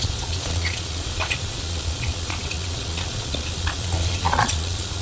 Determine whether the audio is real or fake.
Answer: fake